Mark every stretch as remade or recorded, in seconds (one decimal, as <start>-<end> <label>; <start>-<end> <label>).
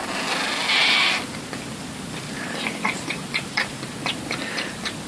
0.0-0.8 recorded; 0.8-3.9 remade; 3.9-5.1 recorded